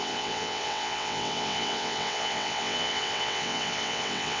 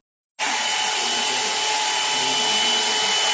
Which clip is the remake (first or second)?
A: first